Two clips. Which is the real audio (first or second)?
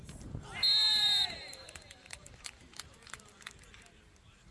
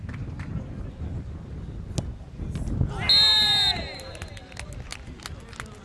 second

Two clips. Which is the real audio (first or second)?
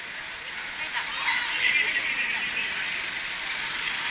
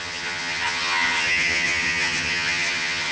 first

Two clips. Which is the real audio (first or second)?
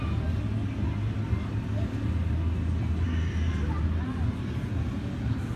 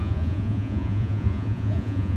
first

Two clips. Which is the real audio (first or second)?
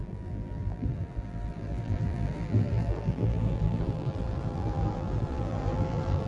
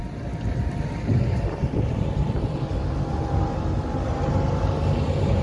second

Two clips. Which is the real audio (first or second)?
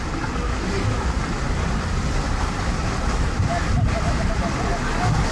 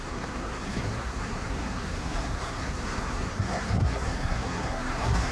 first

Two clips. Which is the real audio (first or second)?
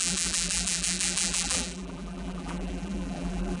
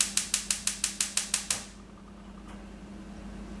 second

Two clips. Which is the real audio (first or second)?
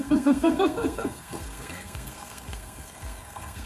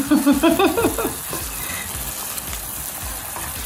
second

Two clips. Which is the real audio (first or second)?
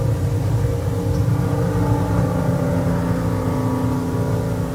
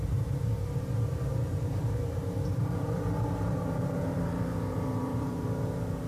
first